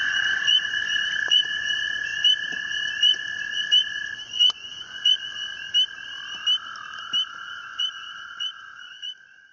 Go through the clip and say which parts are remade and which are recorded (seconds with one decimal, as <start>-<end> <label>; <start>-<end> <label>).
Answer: 0.0-5.5 remade; 5.5-7.3 recorded; 7.3-9.5 remade